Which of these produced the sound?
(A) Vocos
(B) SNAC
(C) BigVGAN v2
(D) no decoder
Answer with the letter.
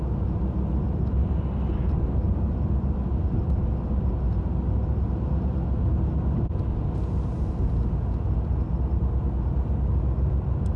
D